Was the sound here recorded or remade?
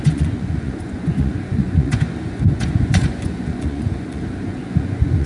remade